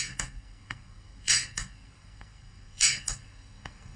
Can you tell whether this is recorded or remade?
remade